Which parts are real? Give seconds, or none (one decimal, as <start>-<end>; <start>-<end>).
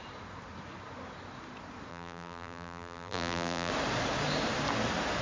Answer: 0.0-1.9; 3.7-5.2